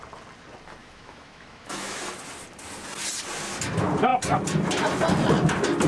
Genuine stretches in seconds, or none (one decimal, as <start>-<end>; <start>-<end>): 0.0-0.8; 2.0-5.9